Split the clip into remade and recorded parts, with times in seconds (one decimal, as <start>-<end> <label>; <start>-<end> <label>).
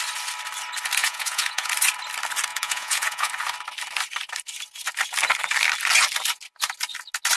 0.0-1.0 recorded; 1.0-1.7 remade; 1.7-2.5 recorded; 2.5-3.3 remade; 3.3-7.4 recorded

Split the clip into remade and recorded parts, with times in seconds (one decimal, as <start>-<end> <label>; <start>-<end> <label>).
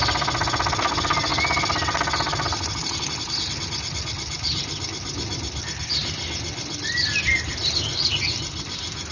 0.0-9.1 recorded